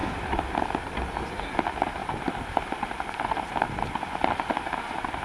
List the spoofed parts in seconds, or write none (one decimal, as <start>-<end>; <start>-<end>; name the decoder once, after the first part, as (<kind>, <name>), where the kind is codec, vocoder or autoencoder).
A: 2.0-4.2 (vocoder, BigVGAN v2)